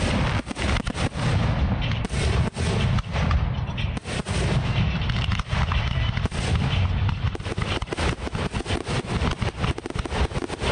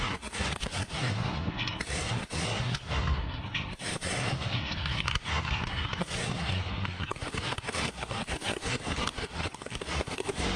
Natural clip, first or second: first